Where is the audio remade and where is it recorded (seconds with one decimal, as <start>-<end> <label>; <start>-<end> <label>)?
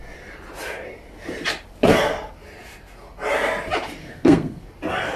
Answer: 0.0-4.0 recorded; 4.0-4.6 remade; 4.6-5.2 recorded